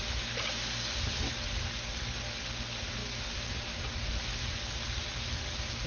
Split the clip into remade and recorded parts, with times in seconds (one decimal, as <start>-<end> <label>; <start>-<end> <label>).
0.0-5.9 recorded

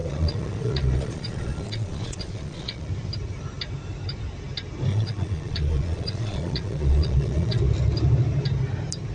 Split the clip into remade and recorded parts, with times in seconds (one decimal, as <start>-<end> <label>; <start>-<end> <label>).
0.0-2.9 remade; 2.9-4.9 recorded; 4.9-7.6 remade; 7.6-9.1 recorded